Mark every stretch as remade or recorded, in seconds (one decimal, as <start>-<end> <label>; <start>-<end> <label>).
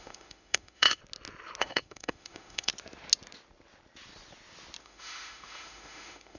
0.0-1.0 remade; 1.0-1.6 recorded; 1.6-2.7 remade; 2.7-4.8 recorded; 4.8-6.4 remade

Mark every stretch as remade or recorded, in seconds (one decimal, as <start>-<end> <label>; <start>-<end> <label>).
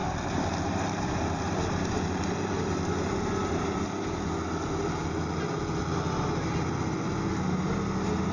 0.0-4.7 remade; 4.7-8.3 recorded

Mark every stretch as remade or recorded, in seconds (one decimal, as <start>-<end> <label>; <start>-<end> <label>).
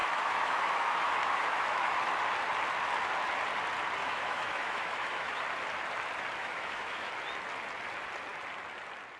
0.0-1.9 remade; 1.9-4.0 recorded; 4.0-5.4 remade; 5.4-6.4 recorded; 6.4-7.1 remade; 7.1-9.2 recorded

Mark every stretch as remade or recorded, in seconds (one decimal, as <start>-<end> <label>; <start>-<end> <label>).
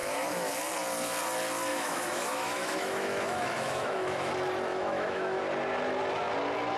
0.0-0.5 remade; 0.5-1.7 recorded; 1.7-4.3 remade; 4.3-4.7 recorded; 4.7-5.4 remade; 5.4-6.8 recorded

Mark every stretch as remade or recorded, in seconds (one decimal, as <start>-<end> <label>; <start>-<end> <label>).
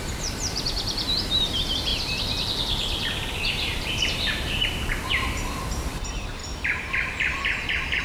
0.0-1.9 remade; 1.9-3.5 recorded; 3.5-8.0 remade